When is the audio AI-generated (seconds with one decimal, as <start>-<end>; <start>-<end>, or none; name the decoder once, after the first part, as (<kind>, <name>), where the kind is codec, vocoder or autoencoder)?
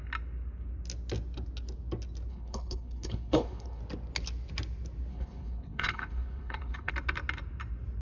2.3-3.8 (codec, HILCodec); 5.1-6.9